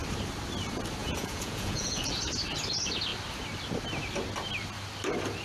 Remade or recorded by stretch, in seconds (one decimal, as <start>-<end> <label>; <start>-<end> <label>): 0.0-1.0 recorded; 1.0-2.1 remade; 2.1-5.4 recorded